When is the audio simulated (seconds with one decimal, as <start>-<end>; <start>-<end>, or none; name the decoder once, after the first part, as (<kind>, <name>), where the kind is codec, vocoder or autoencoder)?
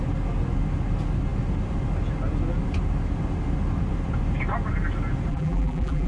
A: 5.3-6.1 (vocoder, BigVGAN v2)